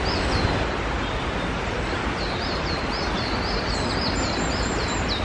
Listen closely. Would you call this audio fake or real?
real